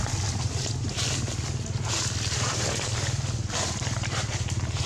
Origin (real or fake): real